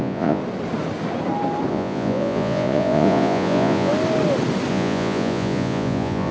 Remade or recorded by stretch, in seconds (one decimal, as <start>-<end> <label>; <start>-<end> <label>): 0.0-0.4 remade; 0.4-1.7 recorded; 1.7-3.9 remade; 3.9-4.7 recorded; 4.7-6.3 remade